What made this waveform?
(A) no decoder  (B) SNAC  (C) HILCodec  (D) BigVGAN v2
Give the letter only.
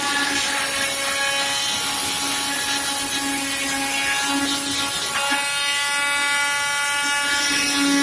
A